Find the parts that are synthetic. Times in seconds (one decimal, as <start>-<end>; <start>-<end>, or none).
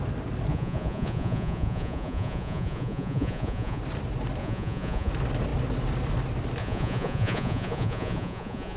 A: 0.5-3.8; 4.4-5.1; 6.6-8.8